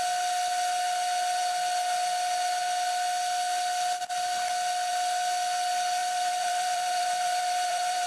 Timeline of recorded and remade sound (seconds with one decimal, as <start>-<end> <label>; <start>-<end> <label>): 0.0-6.0 recorded; 6.0-8.1 remade